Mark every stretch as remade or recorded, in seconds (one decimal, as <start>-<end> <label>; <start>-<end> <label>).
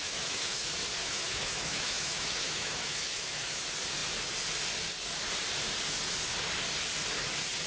0.0-0.6 remade; 0.6-1.0 recorded; 1.0-3.6 remade; 3.6-7.7 recorded